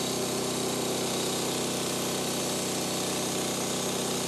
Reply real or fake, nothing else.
real